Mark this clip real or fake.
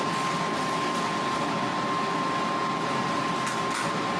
real